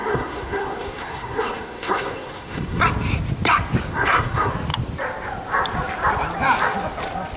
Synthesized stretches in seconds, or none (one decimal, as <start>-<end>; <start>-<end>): 0.0-2.8; 3.9-4.5